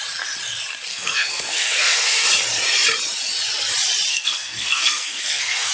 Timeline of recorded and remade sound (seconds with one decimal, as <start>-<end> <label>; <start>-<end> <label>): 0.0-0.9 recorded; 0.9-2.3 remade; 2.3-4.1 recorded; 4.1-5.7 remade